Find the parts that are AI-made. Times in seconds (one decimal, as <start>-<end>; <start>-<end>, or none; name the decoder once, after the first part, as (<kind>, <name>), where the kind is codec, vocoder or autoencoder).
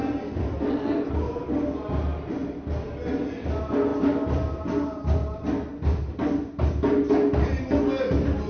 none